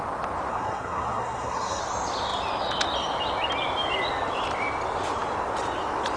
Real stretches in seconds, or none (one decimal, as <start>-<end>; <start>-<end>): 0.0-0.5; 1.8-6.2